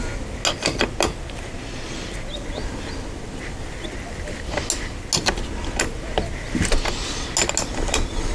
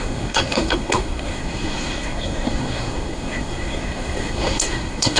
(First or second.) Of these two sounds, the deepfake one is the second